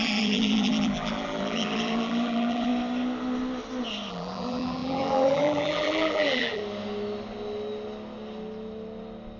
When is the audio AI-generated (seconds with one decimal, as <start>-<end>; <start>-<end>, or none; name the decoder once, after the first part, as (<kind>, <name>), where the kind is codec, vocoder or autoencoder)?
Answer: 0.0-2.7 (vocoder, BigVGAN v2); 4.1-6.6